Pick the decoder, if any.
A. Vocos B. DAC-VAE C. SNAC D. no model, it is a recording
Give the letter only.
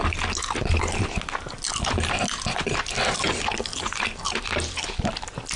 D